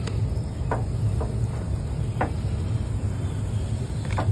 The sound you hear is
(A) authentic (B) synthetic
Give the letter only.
A